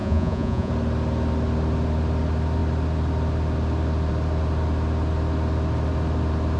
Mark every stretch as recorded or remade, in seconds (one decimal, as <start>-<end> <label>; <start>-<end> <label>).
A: 0.0-0.7 remade; 0.7-6.6 recorded